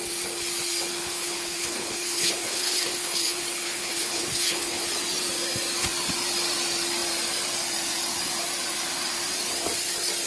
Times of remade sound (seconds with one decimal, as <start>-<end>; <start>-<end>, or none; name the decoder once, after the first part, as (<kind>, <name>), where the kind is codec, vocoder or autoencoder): 1.0-4.8 (codec, HILCodec)